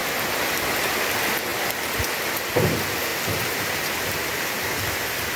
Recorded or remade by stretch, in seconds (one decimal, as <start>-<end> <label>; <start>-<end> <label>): 0.0-3.1 recorded; 3.1-4.6 remade; 4.6-5.4 recorded